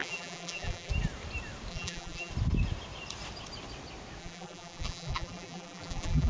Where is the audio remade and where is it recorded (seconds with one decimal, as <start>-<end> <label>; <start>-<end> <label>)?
0.0-0.9 remade; 0.9-1.7 recorded; 1.7-2.3 remade; 2.3-4.2 recorded; 4.2-6.3 remade